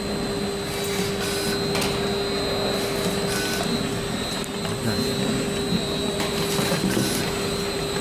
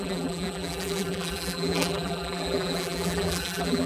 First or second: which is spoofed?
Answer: second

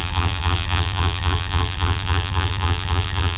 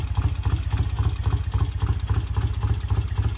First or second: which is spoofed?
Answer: first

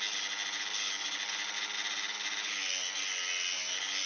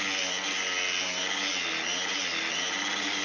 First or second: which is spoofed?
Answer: second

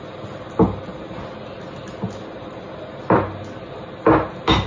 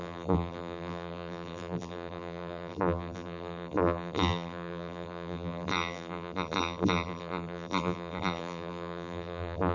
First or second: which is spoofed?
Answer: second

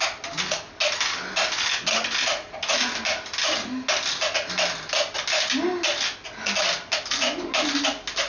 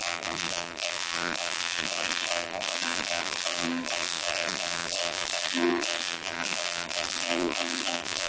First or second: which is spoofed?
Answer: second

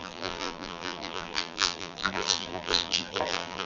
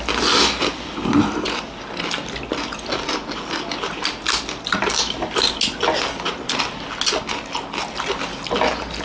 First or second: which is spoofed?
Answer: first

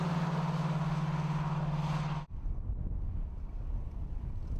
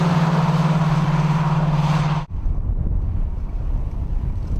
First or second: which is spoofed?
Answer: second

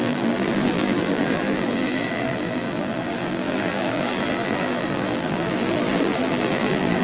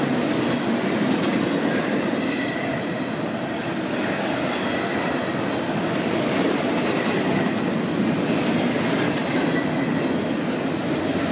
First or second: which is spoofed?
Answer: first